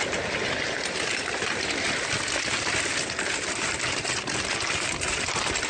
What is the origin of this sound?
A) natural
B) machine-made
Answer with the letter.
A